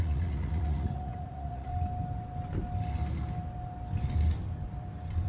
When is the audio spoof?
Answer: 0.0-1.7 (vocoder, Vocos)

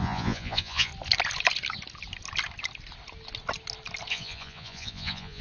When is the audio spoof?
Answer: 0.0-0.9 (vocoder, Vocos); 4.1-5.4

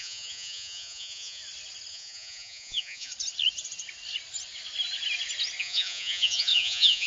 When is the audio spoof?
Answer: 0.0-1.4 (vocoder, Vocos); 1.9-3.1; 5.6-7.1

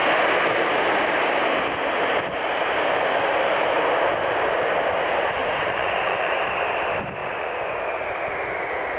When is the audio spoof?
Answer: 5.4-6.4 (vocoder, Vocos); 7.2-7.8

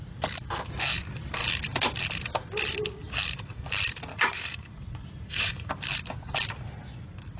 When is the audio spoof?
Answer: 4.1-5.7 (vocoder, Vocos)

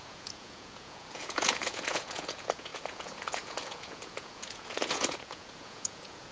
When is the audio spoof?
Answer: 0.0-6.3 (vocoder, Vocos)

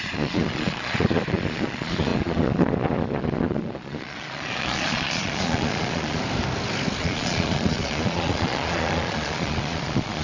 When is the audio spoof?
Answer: 0.0-6.2 (vocoder, Vocos); 7.0-10.2